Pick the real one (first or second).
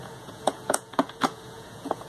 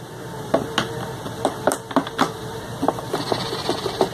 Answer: second